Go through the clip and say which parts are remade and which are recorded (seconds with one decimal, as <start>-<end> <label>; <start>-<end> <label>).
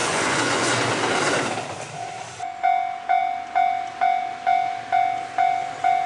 0.0-0.9 remade; 0.9-6.1 recorded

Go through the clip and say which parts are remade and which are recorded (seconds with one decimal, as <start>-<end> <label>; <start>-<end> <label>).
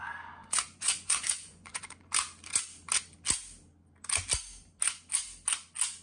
0.0-0.4 recorded; 0.4-2.1 remade; 2.1-6.0 recorded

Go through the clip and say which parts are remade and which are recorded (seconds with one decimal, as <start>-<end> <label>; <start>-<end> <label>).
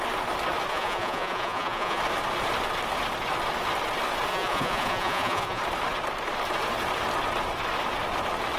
0.0-0.7 recorded; 0.7-2.0 remade; 2.0-4.3 recorded; 4.3-5.6 remade; 5.6-8.6 recorded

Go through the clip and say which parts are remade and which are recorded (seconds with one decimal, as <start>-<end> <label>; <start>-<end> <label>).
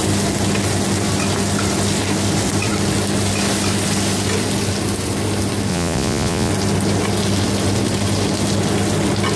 0.0-5.7 recorded; 5.7-6.5 remade; 6.5-9.4 recorded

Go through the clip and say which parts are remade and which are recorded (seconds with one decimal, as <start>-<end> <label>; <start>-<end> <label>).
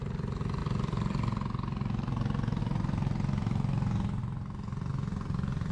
0.0-5.7 recorded